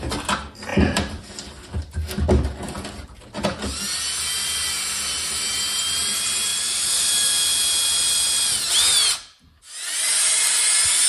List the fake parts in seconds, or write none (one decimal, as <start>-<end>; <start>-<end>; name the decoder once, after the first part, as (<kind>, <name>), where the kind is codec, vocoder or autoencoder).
0.7-1.8 (vocoder, BigVGAN v2); 6.5-7.3